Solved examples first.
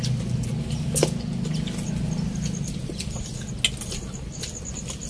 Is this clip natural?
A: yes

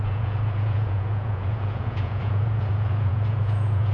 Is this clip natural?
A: no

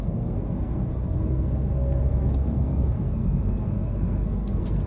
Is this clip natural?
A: no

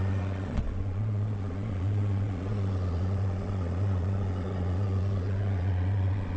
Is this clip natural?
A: no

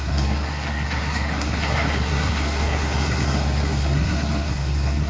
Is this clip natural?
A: no